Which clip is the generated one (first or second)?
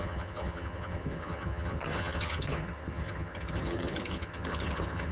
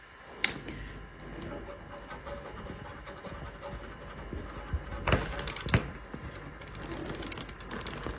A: first